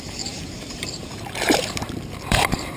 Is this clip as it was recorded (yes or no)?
no